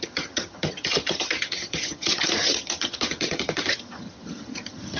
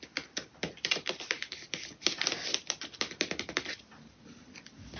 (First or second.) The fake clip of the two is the first